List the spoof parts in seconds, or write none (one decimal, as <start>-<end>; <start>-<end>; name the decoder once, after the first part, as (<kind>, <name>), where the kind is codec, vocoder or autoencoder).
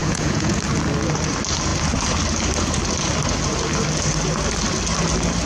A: 0.0-0.6 (vocoder, Vocos)